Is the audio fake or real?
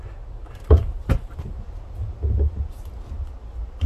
real